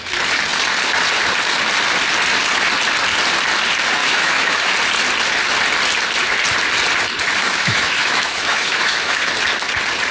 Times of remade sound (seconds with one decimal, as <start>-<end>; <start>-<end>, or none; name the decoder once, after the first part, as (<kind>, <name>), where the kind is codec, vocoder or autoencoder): 4.0-4.7 (autoencoder, DAC-VAE); 7.4-9.3